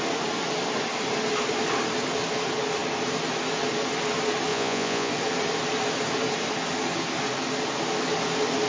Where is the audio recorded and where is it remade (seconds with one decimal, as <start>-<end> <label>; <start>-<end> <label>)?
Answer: 0.0-4.5 recorded; 4.5-5.1 remade; 5.1-8.7 recorded